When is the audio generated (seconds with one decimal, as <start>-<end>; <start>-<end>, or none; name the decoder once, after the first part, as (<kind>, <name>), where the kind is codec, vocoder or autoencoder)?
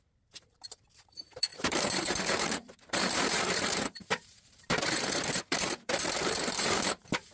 0.0-7.3 (vocoder, BigVGAN v2)